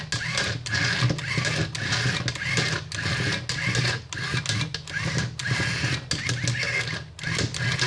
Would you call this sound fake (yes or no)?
no